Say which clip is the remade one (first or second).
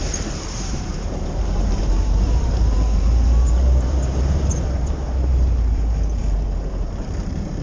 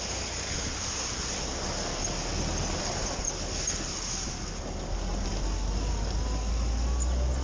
first